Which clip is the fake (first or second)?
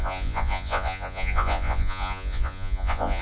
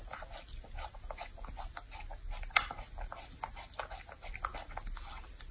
first